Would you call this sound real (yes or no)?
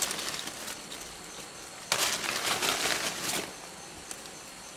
yes